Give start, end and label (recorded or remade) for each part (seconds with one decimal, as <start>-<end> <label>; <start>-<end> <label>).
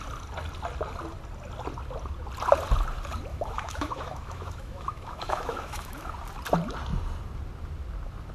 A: 0.0-3.3 recorded; 3.3-6.1 remade; 6.1-8.3 recorded